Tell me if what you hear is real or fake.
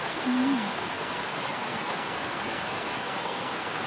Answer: fake